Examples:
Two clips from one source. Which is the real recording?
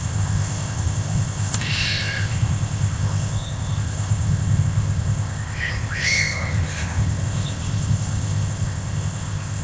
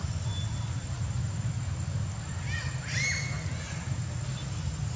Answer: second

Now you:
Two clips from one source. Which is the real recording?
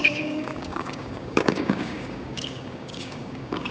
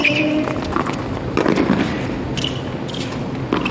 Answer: second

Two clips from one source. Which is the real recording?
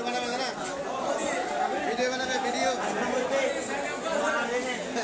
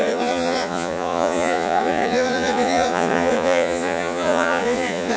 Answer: first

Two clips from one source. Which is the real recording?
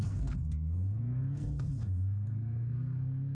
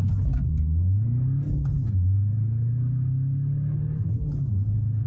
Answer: second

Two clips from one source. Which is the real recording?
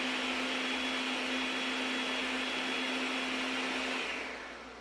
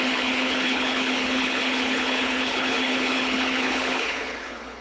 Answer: first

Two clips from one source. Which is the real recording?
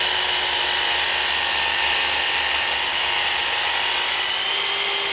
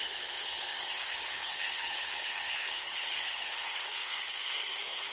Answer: first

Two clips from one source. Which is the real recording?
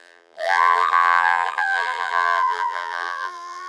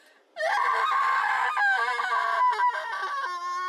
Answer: second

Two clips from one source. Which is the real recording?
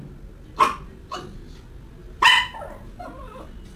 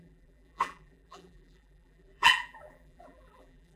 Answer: first